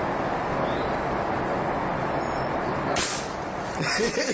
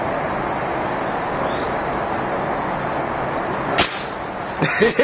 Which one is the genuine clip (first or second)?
second